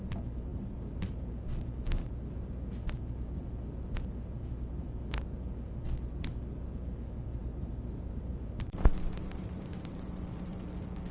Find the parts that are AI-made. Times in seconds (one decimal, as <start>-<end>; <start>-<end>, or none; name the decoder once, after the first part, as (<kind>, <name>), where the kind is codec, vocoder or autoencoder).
0.5-1.3 (vocoder, BigVGAN v2); 7.4-10.6